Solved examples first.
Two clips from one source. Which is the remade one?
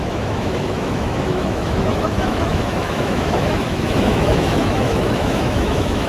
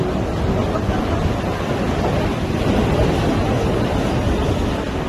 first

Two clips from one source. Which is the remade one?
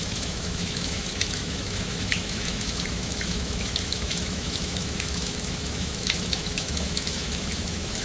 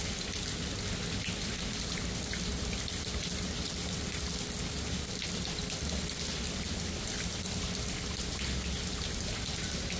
first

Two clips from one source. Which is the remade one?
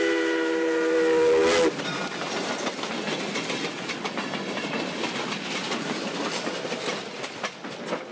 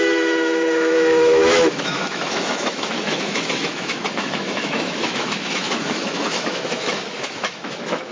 second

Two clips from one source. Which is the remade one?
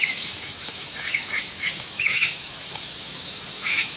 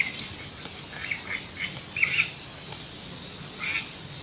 first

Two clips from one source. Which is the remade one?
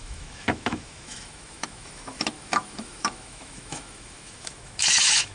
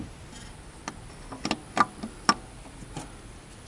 first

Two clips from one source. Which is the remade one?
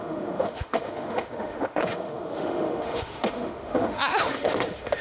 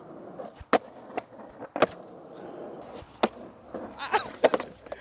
first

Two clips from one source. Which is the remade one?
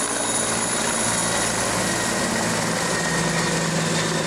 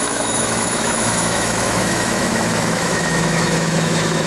second